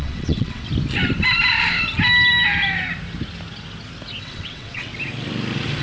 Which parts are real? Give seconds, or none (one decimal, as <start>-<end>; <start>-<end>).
0.7-4.2; 4.9-5.8